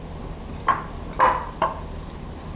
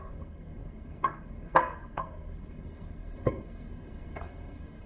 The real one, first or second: first